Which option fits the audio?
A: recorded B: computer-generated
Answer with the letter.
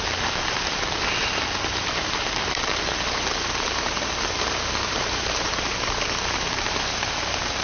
B